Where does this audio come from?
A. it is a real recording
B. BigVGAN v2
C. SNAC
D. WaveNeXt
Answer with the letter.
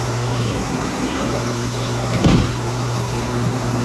C